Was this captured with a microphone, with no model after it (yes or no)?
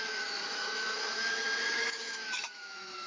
no